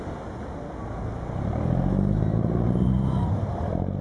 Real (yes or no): yes